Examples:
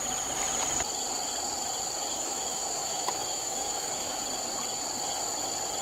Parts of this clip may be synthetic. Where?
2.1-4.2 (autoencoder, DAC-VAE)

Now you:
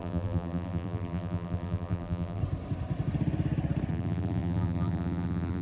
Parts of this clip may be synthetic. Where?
0.0-2.4 (vocoder, BigVGAN v2); 3.9-5.6

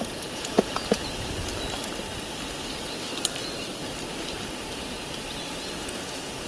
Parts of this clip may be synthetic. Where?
0.0-1.5 (vocoder, Vocos); 5.4-6.5

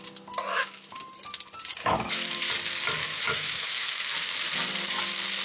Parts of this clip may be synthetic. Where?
0.5-1.0 (autoencoder, DAC-VAE); 1.8-2.4; 3.0-4.0

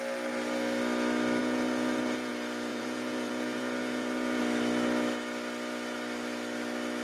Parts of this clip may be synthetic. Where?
1.4-2.3 (vocoder, Vocos); 2.7-4.4

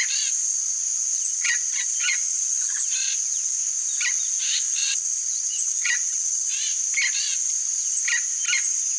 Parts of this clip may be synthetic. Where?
0.9-2.9 (vocoder, Vocos); 4.8-6.5

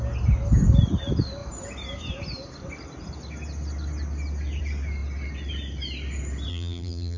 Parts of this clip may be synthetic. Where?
6.5-7.2 (vocoder, BigVGAN v2)

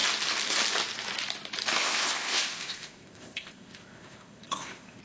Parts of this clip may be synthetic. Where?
1.8-5.0 (codec, ZipCodec)